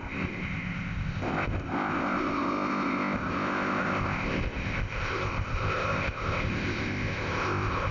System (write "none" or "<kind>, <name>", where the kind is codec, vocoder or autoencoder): codec, ZipCodec